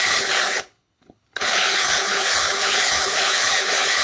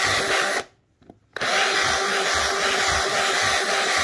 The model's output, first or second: first